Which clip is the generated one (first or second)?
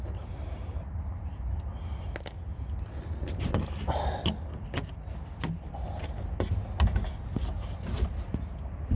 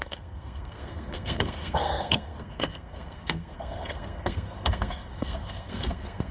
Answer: second